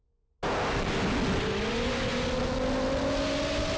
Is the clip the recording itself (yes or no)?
yes